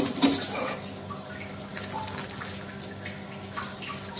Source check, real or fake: real